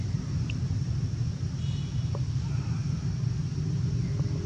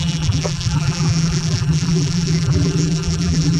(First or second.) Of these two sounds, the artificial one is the second